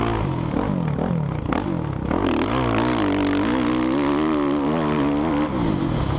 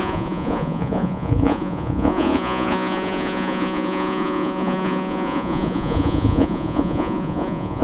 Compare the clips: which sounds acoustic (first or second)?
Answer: first